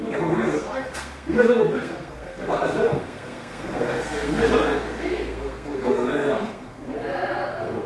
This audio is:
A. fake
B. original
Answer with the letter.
A